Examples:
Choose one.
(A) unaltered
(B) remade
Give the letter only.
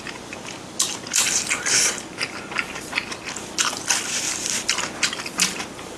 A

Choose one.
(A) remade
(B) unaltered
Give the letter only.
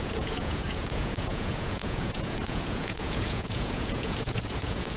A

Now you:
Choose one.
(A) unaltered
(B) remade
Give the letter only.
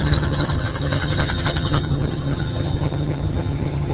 B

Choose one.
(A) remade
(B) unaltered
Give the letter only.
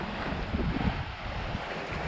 B